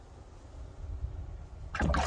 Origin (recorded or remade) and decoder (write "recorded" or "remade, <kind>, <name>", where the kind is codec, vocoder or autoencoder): recorded